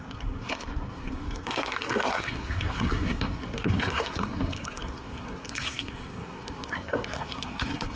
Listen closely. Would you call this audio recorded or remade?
remade